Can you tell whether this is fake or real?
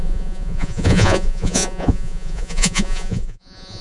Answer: fake